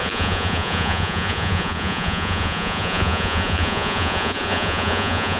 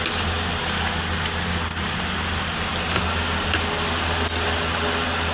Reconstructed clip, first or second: first